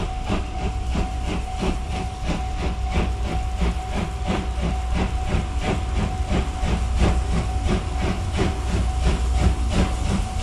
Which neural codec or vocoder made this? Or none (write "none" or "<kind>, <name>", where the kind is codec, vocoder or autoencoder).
none